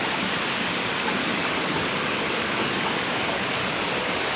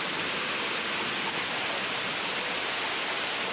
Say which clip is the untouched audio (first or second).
second